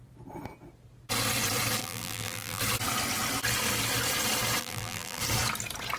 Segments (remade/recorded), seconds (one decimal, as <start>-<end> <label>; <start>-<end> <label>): 0.0-1.8 recorded; 1.8-2.6 remade; 2.6-4.6 recorded; 4.6-5.2 remade; 5.2-6.0 recorded